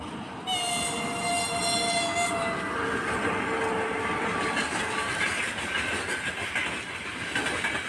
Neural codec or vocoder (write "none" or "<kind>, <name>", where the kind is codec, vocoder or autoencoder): none